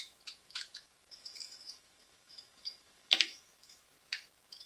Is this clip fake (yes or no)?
yes